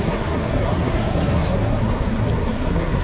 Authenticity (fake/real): fake